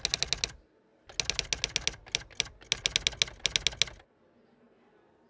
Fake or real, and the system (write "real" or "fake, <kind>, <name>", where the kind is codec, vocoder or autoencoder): real